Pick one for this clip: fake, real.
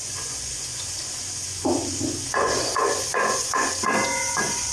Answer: fake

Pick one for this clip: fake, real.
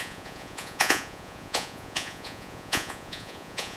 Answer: fake